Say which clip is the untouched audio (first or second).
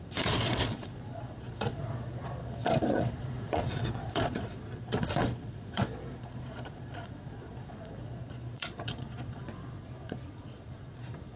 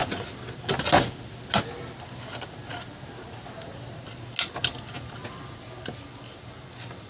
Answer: second